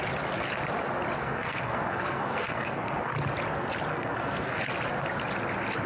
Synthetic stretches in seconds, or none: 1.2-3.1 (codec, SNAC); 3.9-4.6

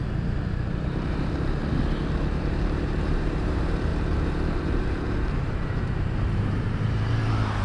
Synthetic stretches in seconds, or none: 0.0-1.6 (vocoder, BigVGAN v2); 2.4-7.6

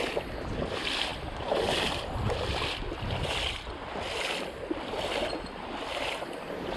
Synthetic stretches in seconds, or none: none

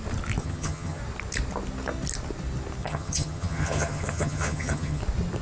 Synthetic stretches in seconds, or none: 0.4-1.0 (vocoder, HiFi-GAN); 2.8-5.0

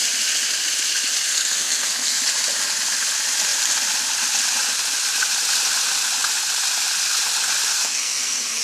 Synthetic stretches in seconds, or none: 1.3-2.2 (codec, SNAC); 7.7-8.6

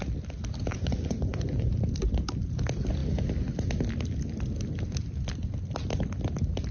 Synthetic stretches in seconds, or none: 0.7-1.7 (vocoder, Vocos)

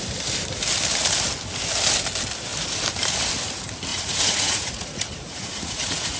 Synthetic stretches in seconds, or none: 3.9-6.2 (vocoder, Vocos)